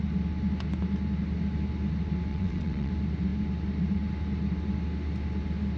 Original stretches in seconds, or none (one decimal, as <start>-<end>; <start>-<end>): 0.0-2.3; 2.9-5.8